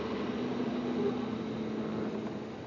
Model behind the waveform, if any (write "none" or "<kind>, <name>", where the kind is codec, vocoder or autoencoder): none